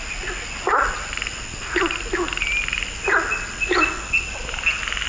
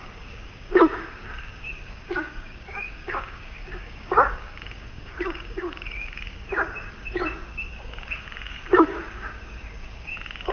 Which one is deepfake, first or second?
second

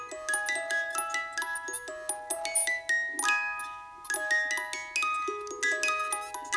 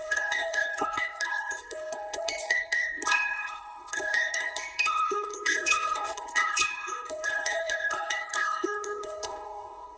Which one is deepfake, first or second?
second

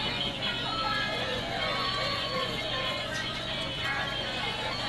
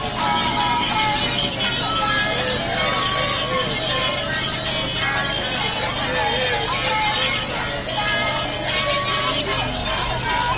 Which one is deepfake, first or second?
first